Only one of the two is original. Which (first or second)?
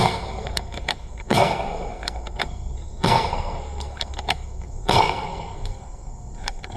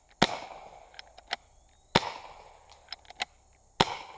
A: second